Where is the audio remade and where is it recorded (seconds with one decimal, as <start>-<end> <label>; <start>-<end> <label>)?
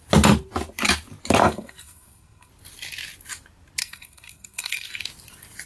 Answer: 0.0-1.4 recorded; 1.4-2.5 remade; 2.5-3.8 recorded; 3.8-5.0 remade; 5.0-5.7 recorded